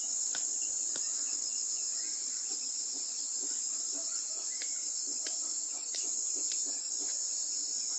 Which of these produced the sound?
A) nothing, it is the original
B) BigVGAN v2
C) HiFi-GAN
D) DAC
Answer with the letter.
A